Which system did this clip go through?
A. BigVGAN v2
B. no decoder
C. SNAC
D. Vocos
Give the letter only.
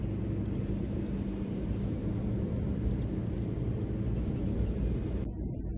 B